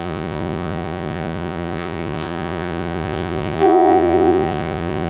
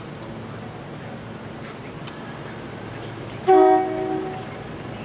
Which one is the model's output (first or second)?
first